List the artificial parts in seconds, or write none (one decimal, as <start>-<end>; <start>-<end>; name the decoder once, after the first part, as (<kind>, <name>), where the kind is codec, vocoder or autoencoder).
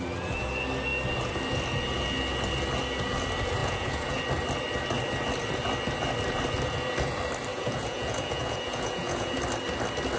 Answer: 3.6-4.2 (vocoder, Vocos); 7.5-9.4